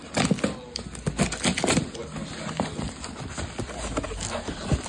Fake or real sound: real